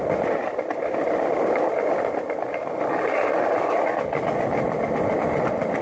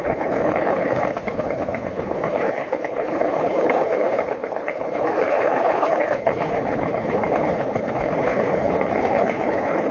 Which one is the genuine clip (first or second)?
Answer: first